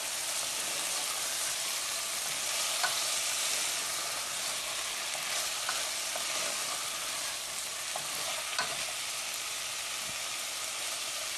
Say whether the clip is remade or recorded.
recorded